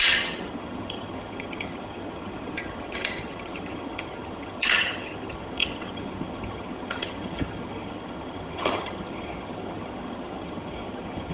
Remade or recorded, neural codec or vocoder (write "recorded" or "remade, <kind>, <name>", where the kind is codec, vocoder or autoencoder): remade, vocoder, HiFi-GAN